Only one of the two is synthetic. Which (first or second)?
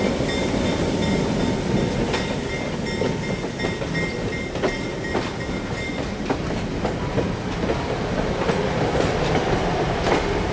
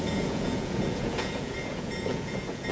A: second